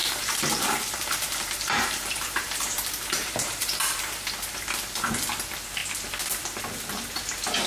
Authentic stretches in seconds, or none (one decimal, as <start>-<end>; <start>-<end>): 4.6-7.7